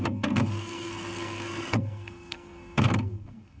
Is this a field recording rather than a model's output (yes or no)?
no